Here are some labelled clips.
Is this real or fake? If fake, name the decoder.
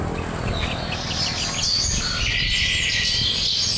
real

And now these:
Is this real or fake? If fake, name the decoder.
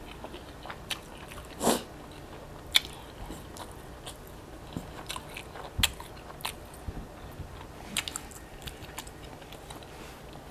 real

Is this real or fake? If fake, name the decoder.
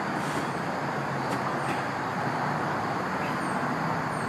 real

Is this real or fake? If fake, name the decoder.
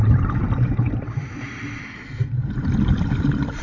real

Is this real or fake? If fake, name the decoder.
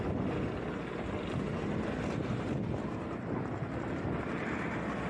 real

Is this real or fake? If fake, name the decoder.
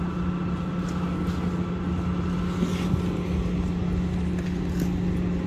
real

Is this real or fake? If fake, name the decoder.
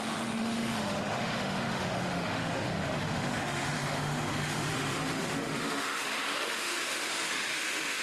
fake, autoencoder, DAC-VAE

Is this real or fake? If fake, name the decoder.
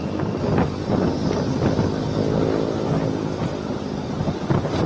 real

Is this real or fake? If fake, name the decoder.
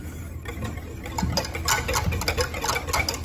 real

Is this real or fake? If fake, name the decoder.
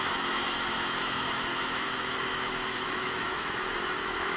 fake, autoencoder, DAC-VAE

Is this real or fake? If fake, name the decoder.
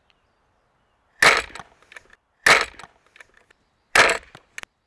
real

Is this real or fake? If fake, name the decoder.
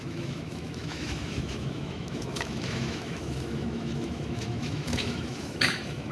fake, autoencoder, DAC-VAE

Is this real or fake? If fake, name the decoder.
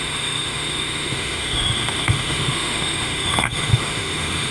fake, autoencoder, DAC-VAE